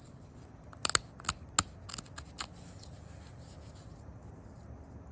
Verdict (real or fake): real